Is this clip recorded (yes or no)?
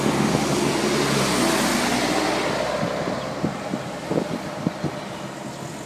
yes